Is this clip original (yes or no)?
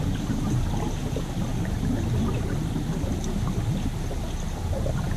yes